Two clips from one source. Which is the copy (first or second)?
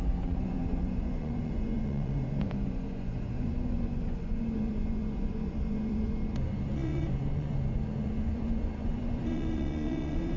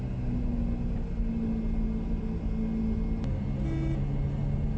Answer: first